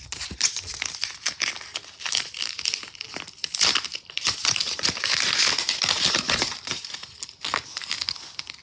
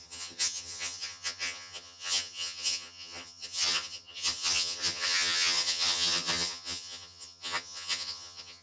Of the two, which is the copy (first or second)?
second